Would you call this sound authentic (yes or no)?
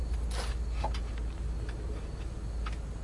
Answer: yes